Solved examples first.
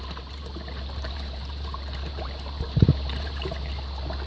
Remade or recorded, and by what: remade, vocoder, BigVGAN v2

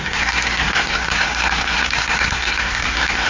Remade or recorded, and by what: remade, codec, SNAC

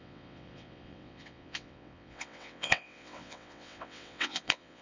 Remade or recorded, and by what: remade, vocoder, WaveNeXt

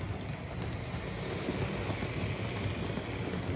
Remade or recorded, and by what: recorded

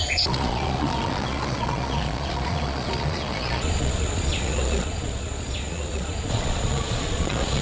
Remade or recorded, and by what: remade, vocoder, Vocos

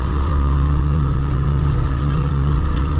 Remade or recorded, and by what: remade, vocoder, WaveNeXt